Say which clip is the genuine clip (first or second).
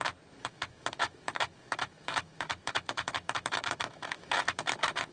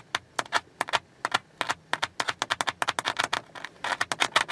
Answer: second